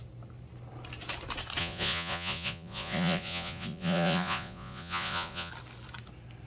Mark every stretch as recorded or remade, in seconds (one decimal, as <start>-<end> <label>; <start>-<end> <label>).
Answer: 0.0-1.6 recorded; 1.6-5.5 remade; 5.5-6.5 recorded